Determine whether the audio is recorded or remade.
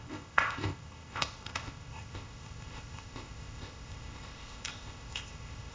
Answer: remade